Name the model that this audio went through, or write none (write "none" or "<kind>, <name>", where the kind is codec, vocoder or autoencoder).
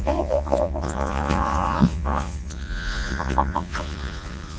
vocoder, Vocos